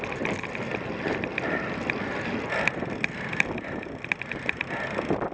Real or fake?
real